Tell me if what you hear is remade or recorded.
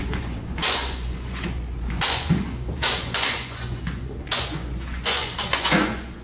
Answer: remade